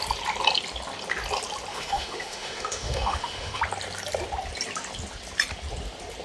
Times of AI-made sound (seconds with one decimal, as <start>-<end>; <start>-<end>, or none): 1.7-3.6